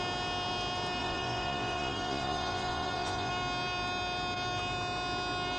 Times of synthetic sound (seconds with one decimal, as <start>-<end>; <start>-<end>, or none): 1.0-3.3